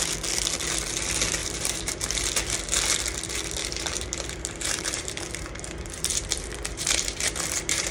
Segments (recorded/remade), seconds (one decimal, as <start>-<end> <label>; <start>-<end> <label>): 0.0-1.4 recorded; 1.4-2.3 remade; 2.3-3.6 recorded; 3.6-7.9 remade